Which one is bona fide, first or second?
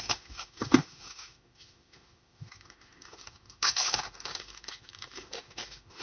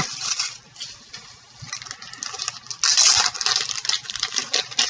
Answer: second